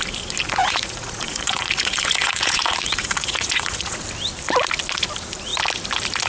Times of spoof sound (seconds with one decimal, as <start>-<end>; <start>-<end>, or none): 0.6-4.0